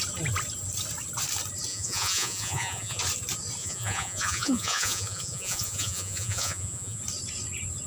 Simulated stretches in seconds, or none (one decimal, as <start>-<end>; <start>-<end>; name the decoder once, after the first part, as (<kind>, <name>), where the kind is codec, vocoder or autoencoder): 1.7-3.0 (vocoder, Vocos); 3.6-7.0